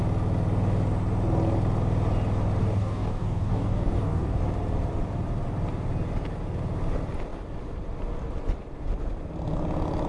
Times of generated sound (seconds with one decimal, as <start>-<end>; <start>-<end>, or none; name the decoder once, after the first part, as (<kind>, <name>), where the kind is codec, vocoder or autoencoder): 2.6-4.4 (codec, DAC)